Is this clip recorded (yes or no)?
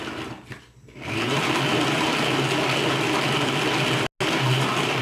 yes